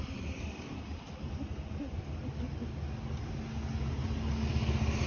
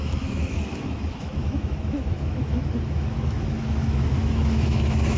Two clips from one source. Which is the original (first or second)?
first